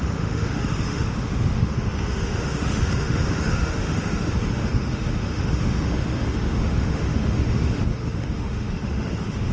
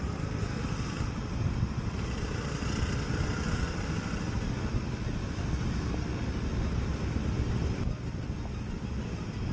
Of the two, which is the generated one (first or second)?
first